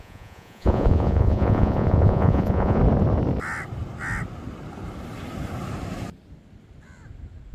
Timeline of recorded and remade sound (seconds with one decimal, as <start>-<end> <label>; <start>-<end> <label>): 0.0-2.8 remade; 2.8-7.5 recorded